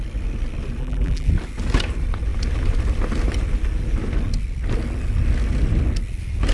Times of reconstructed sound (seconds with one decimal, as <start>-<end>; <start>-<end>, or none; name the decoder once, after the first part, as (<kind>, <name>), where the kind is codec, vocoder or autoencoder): 0.8-1.3 (vocoder, BigVGAN v2)